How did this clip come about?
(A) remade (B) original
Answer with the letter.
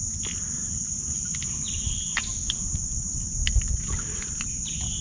B